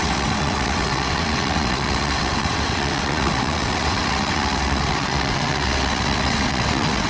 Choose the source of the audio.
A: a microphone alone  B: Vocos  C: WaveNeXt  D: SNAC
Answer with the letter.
C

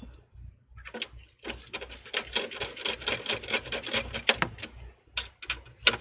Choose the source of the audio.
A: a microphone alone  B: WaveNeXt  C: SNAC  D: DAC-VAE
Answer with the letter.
A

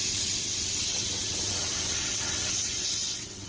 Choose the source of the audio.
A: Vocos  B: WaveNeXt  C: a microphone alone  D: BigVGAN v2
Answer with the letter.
B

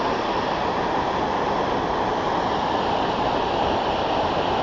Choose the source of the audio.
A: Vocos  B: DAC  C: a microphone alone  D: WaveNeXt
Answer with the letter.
C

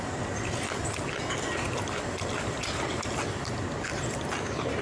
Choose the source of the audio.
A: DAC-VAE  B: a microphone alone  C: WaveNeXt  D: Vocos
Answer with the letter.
B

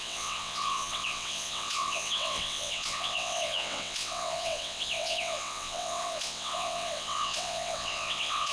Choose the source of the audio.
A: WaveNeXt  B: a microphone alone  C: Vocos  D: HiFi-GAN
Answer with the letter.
A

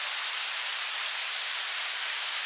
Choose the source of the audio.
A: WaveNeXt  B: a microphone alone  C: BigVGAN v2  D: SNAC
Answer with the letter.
B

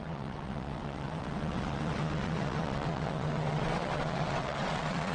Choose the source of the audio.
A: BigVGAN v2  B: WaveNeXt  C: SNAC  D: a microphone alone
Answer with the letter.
B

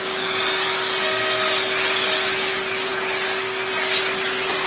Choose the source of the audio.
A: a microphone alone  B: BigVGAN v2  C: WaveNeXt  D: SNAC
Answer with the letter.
A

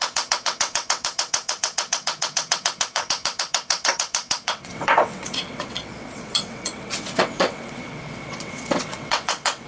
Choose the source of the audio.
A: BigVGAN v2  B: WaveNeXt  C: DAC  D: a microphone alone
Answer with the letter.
B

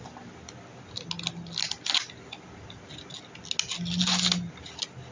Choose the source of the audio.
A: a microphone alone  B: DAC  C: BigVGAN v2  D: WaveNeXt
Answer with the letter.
A